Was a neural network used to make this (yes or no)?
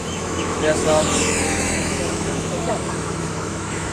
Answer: yes